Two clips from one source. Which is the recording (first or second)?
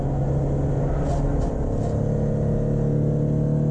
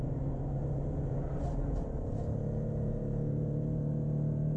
first